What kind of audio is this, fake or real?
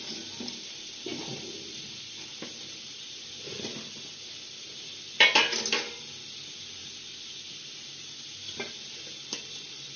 fake